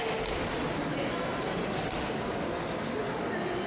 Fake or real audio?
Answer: real